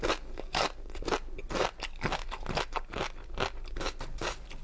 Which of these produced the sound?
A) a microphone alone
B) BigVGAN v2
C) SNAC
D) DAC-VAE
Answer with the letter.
A